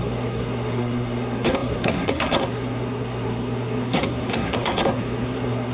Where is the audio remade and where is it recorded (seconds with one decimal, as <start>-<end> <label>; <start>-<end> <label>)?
0.0-5.7 remade